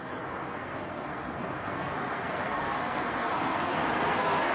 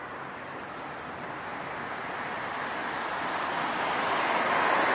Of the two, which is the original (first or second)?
second